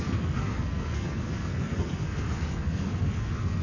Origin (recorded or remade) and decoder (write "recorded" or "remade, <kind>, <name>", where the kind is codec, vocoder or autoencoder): remade, codec, SNAC